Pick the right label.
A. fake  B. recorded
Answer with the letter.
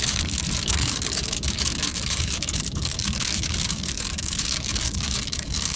A